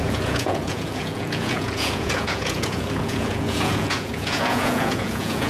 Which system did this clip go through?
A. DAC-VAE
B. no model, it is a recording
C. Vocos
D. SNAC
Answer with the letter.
C